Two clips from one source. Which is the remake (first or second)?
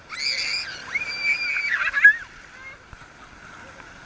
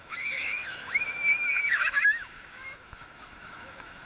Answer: second